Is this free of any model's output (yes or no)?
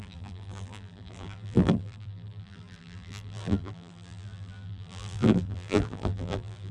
no